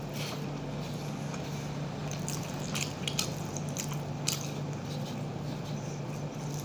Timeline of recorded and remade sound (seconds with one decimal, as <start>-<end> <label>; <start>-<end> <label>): 0.0-6.6 recorded